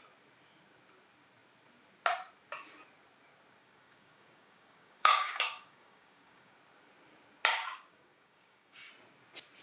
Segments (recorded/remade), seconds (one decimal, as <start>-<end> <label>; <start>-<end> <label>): 0.0-3.6 recorded; 3.6-6.5 remade; 6.5-7.5 recorded; 7.5-8.9 remade; 8.9-9.6 recorded